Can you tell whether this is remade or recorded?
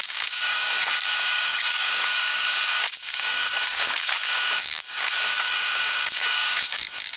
remade